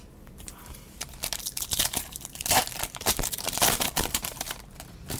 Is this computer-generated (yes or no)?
yes